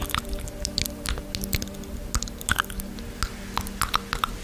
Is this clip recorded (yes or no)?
yes